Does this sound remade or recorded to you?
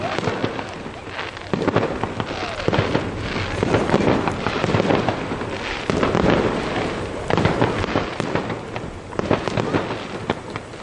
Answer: recorded